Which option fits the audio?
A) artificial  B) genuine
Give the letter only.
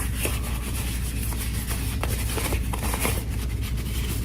B